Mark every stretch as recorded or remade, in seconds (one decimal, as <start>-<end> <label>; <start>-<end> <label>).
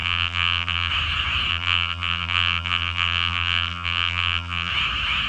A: 0.0-0.9 remade; 0.9-1.5 recorded; 1.5-4.7 remade; 4.7-5.3 recorded